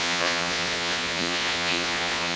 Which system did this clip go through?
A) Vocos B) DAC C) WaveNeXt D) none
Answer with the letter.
A